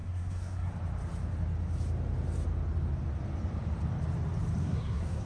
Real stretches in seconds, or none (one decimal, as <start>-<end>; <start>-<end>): 0.7-4.6